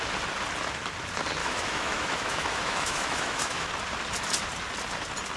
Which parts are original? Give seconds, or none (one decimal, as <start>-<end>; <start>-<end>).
0.0-1.4; 3.7-5.4